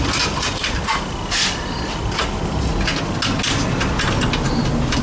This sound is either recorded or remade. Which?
recorded